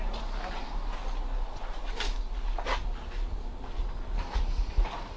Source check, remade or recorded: recorded